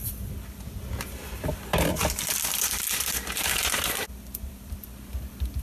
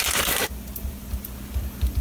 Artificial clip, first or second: first